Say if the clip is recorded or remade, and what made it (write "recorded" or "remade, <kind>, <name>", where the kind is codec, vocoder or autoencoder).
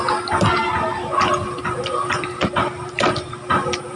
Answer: recorded